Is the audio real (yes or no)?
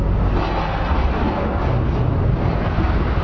yes